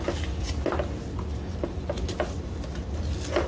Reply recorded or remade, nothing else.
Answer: recorded